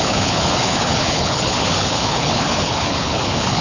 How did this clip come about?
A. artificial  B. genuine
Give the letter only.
A